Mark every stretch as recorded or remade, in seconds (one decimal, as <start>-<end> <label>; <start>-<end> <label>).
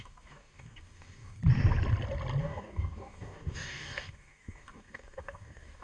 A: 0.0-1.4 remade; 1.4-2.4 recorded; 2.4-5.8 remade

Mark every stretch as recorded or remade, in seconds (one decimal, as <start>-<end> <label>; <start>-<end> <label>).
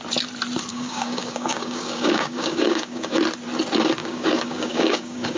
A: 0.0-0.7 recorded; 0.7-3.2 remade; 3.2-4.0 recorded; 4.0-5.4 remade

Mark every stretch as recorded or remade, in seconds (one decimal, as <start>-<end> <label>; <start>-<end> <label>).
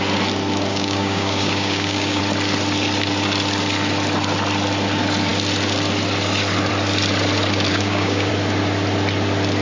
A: 0.0-0.7 recorded; 0.7-2.2 remade; 2.2-7.7 recorded; 7.7-8.3 remade; 8.3-9.6 recorded